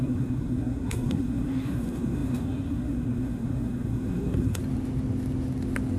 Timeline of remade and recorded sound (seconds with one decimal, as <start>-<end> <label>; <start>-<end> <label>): 0.0-4.6 remade; 4.6-6.0 recorded